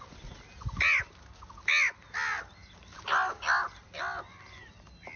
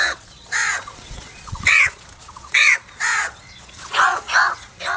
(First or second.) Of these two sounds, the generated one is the second